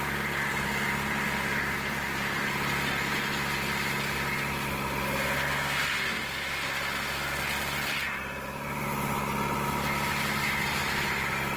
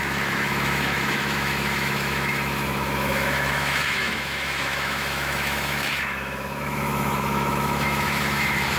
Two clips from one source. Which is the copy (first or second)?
second